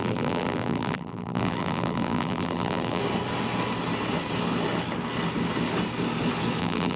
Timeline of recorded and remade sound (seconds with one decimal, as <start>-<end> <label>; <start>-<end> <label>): 0.0-3.0 remade; 3.0-6.6 recorded; 6.6-7.0 remade